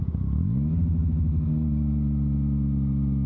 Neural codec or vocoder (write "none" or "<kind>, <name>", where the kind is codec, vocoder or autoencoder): none